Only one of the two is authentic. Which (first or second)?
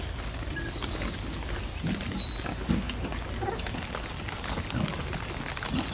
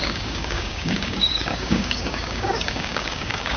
first